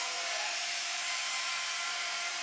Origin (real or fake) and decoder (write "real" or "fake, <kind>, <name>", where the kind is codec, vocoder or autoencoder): fake, vocoder, BigVGAN v2